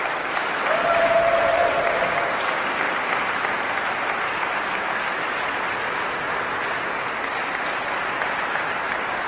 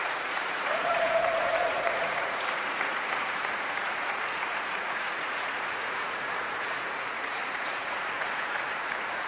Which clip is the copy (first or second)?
second